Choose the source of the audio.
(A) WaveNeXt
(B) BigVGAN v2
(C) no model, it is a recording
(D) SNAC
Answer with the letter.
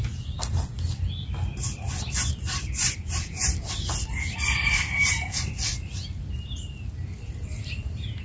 B